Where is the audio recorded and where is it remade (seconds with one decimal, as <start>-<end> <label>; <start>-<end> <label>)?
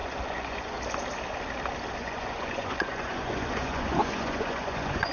0.0-0.8 remade; 0.8-2.0 recorded; 2.0-5.1 remade